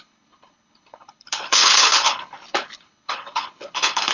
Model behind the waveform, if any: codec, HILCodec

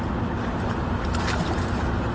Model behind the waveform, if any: none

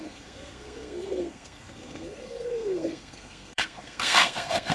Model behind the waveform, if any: codec, SNAC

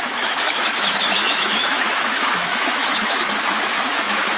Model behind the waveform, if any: autoencoder, DAC-VAE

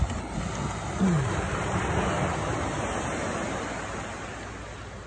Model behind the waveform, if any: none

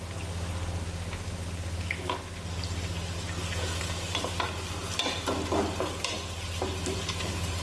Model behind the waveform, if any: none